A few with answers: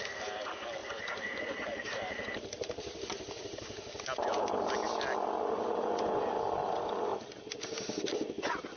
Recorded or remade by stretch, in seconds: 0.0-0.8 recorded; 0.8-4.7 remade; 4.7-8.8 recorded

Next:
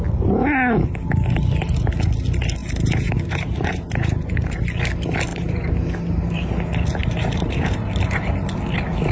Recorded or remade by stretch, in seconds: 0.0-2.6 recorded; 2.6-4.6 remade; 4.6-5.3 recorded; 5.3-5.9 remade; 5.9-7.0 recorded; 7.0-8.3 remade; 8.3-9.1 recorded